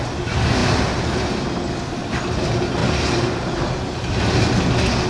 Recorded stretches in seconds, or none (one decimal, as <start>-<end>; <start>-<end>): 0.0-5.1